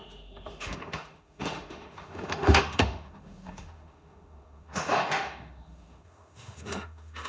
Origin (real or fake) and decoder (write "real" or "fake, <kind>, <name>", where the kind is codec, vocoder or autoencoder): fake, autoencoder, DAC-VAE